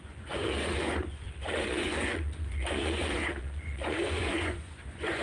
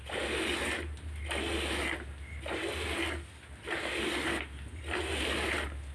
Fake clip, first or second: first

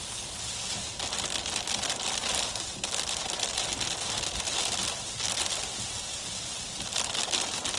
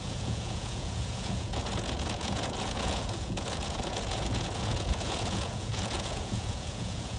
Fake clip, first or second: second